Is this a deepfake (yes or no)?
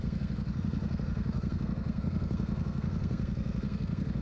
yes